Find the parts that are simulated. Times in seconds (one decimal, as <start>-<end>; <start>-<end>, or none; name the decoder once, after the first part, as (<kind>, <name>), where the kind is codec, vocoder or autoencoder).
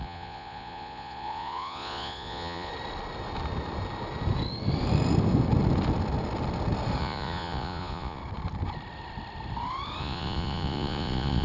0.0-2.7 (vocoder, Vocos); 7.0-8.2; 10.0-11.4